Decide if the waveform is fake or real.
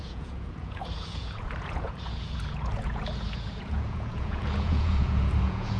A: fake